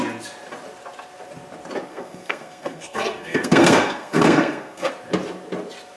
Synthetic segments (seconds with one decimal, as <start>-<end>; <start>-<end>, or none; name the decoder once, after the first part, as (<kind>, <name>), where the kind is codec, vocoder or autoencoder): 1.9-4.9 (codec, SNAC)